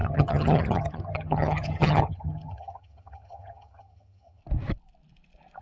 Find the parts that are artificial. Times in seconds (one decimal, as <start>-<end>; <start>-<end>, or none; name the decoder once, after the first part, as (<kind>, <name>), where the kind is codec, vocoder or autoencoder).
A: 0.0-4.4 (vocoder, HiFi-GAN)